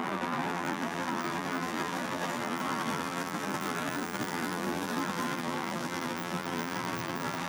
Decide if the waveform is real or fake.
fake